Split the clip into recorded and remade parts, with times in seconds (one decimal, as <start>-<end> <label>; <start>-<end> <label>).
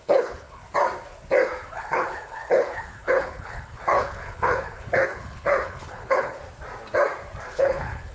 0.0-0.6 remade; 0.6-1.7 recorded; 1.7-6.4 remade; 6.4-7.5 recorded; 7.5-8.1 remade